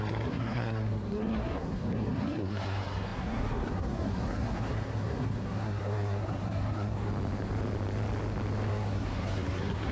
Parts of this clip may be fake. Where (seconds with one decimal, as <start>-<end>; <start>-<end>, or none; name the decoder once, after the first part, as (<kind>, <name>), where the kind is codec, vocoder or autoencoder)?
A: 0.0-7.1 (codec, SNAC); 8.7-9.9